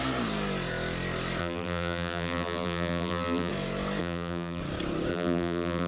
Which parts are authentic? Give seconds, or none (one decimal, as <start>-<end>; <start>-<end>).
0.0-1.4; 3.5-4.0; 4.6-5.1